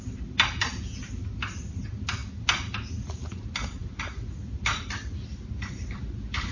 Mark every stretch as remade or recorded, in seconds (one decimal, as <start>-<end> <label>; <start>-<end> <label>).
0.0-5.3 recorded; 5.3-6.5 remade